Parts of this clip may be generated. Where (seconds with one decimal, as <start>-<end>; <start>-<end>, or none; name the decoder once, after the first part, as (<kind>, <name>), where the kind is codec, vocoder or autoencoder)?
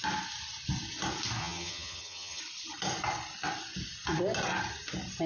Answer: 1.4-2.4 (vocoder, HiFi-GAN)